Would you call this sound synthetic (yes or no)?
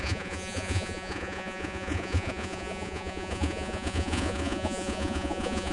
yes